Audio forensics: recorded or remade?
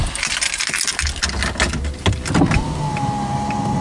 recorded